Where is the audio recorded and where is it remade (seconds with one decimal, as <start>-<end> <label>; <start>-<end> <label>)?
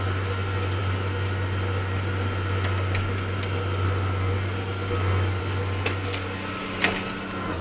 0.0-7.6 recorded